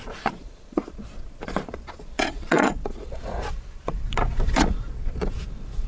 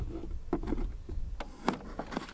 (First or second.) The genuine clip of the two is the second